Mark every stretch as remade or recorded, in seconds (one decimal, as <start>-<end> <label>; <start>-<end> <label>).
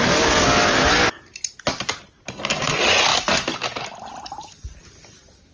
0.0-5.5 recorded